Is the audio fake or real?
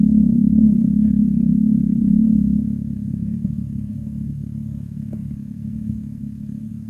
fake